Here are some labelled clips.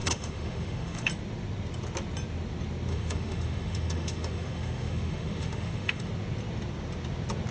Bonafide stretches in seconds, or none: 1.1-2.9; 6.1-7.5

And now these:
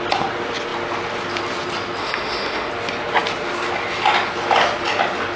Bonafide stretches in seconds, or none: 0.0-2.0; 2.7-5.4

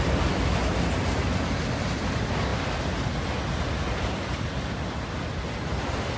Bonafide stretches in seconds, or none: 0.0-6.2